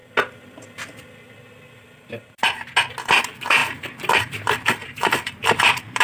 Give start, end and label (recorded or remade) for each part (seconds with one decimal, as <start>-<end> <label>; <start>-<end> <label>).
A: 0.0-3.2 recorded; 3.2-3.6 remade; 3.6-4.2 recorded; 4.2-6.0 remade